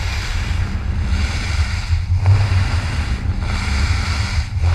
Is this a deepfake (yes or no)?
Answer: no